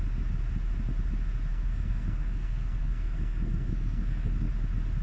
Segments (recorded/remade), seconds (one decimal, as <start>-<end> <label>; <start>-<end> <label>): 0.0-1.5 recorded; 1.5-4.5 remade; 4.5-5.0 recorded